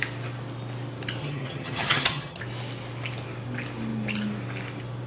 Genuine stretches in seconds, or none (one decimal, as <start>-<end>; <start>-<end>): 0.0-1.2; 2.4-5.1